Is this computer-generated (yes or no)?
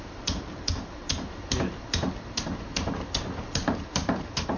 yes